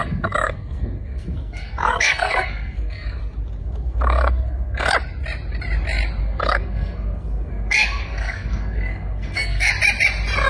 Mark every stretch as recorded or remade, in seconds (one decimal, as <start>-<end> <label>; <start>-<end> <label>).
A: 0.0-3.2 remade; 3.2-3.6 recorded; 3.6-4.9 remade; 4.9-6.2 recorded; 6.2-9.7 remade; 9.7-10.5 recorded